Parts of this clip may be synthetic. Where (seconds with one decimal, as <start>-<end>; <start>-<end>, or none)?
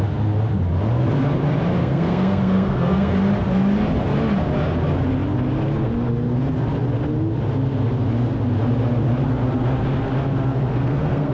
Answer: 1.8-3.1; 10.7-11.3